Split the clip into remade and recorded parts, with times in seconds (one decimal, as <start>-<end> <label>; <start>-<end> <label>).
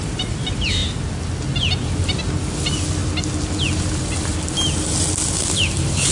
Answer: 0.0-0.8 remade; 0.8-1.6 recorded; 1.6-3.0 remade; 3.0-4.1 recorded; 4.1-5.2 remade; 5.2-6.1 recorded